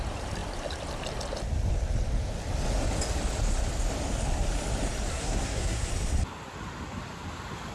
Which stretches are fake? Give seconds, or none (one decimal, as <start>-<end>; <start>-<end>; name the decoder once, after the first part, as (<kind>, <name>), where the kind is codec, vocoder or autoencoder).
5.1-5.9 (codec, SNAC)